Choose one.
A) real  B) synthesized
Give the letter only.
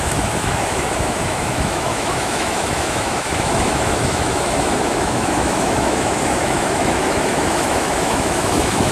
B